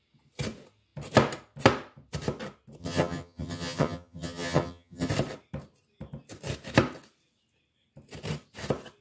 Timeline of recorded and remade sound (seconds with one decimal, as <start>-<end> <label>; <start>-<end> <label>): 0.0-2.8 recorded; 2.8-5.1 remade; 5.1-9.0 recorded